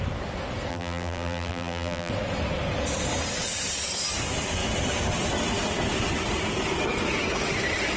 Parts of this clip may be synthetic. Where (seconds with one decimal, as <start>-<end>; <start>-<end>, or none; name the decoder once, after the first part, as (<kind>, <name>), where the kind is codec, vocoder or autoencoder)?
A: 0.7-2.1 (vocoder, BigVGAN v2)

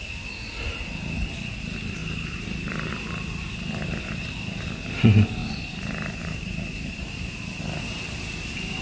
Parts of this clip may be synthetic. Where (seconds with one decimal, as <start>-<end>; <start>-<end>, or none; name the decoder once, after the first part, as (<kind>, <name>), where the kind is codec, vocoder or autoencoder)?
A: 2.0-2.9 (vocoder, BigVGAN v2); 5.4-7.6

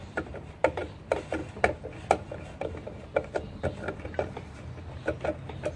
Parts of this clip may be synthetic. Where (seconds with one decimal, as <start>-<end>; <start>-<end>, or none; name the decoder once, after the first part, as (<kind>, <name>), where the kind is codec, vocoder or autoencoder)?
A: 0.0-1.4 (vocoder, BigVGAN v2); 4.9-5.8

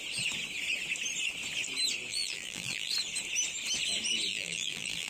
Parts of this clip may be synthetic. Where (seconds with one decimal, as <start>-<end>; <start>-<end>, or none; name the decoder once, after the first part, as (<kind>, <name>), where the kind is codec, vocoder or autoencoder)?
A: 2.1-2.9 (vocoder, BigVGAN v2); 4.3-5.1

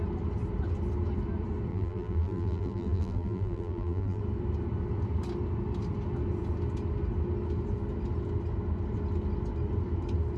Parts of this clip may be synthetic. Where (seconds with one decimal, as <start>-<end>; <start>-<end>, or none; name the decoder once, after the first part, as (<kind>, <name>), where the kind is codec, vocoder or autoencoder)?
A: 1.7-4.2 (vocoder, BigVGAN v2)

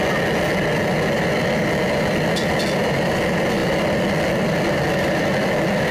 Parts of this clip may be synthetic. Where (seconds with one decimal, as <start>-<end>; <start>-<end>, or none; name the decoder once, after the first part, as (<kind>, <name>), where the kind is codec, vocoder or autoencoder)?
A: none